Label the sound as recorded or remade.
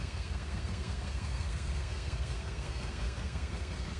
remade